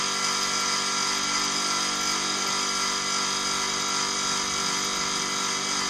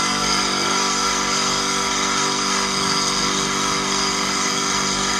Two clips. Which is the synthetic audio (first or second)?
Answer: second